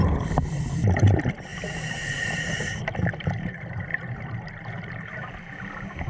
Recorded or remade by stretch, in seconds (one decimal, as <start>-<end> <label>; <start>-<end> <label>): 0.0-3.9 recorded; 3.9-4.5 remade; 4.5-6.1 recorded